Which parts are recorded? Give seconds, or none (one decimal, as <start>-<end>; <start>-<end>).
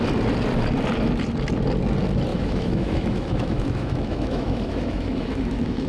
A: 0.0-2.3